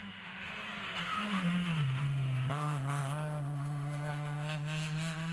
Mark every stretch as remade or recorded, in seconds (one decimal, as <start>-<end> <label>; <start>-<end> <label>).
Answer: 0.0-0.5 remade; 0.5-1.0 recorded; 1.0-5.3 remade